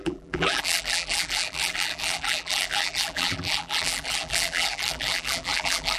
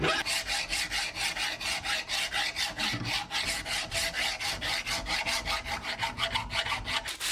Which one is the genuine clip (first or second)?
second